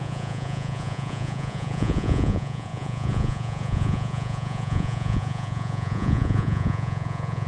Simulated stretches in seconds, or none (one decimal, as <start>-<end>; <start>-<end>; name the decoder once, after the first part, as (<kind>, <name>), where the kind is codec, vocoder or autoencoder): 0.0-7.5 (vocoder, Vocos)